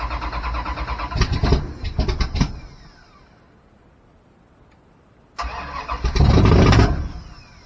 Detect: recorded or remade recorded